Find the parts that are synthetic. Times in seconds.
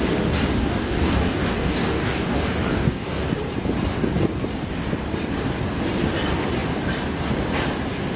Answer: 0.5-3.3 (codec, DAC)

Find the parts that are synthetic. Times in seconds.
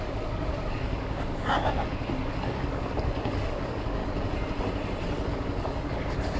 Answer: 0.0-4.0 (codec, DAC); 5.3-6.4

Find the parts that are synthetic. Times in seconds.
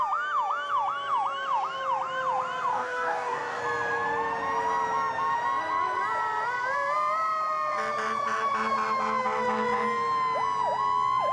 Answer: 2.7-3.6 (codec, DAC)